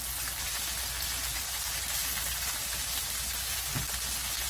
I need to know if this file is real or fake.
real